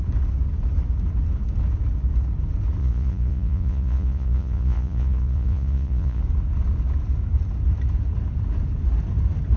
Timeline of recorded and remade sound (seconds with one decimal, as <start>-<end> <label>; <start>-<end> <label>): 0.0-2.8 recorded; 2.8-6.2 remade; 6.2-9.6 recorded